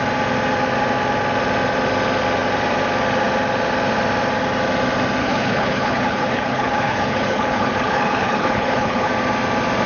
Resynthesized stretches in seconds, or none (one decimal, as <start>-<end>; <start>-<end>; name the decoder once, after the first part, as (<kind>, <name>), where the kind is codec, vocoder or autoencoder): 5.2-9.1 (codec, HILCodec)